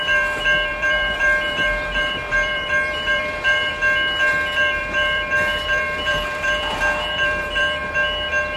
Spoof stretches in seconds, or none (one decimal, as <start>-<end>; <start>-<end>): 0.0-3.7; 4.3-7.8